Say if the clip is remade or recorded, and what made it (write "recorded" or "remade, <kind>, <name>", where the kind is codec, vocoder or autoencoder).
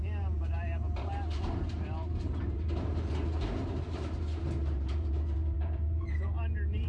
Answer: remade, vocoder, BigVGAN v2